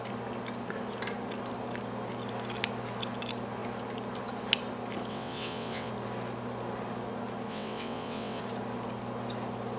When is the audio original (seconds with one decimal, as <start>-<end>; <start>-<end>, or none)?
0.0-5.1; 5.9-7.5; 8.4-9.8